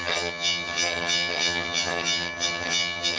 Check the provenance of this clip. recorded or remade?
remade